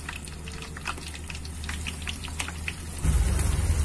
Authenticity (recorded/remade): recorded